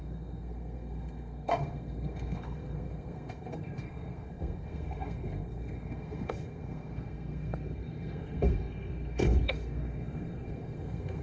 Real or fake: fake